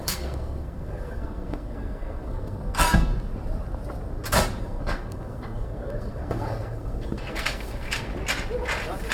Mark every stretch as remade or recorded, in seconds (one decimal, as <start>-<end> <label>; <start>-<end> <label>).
0.0-3.1 remade; 3.1-4.6 recorded; 4.6-8.1 remade; 8.1-9.1 recorded